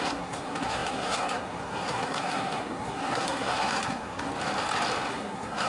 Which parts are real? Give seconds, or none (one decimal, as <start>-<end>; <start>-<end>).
4.3-5.1